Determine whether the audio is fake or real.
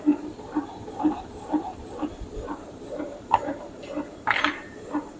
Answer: fake